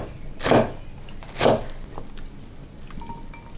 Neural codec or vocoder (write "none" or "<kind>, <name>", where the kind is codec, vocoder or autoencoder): none